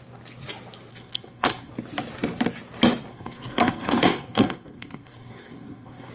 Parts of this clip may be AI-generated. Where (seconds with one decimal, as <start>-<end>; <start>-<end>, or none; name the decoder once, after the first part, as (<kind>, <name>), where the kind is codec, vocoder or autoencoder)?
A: 0.9-1.7 (codec, SNAC); 3.1-6.1